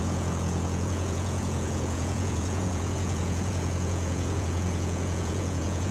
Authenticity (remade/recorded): remade